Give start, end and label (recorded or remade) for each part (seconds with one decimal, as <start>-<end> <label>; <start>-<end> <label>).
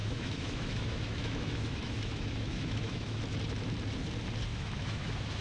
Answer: 0.0-3.2 remade; 3.2-4.5 recorded; 4.5-5.4 remade